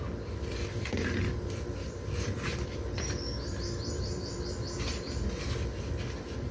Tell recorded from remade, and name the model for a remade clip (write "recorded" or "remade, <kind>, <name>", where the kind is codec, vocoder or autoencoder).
recorded